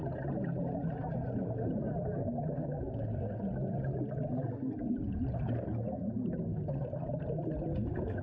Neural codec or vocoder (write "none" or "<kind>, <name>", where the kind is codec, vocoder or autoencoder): none